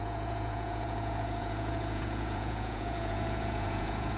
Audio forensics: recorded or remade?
remade